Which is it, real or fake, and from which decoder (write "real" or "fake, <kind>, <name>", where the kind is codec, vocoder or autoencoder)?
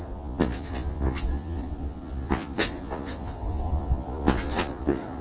fake, vocoder, Vocos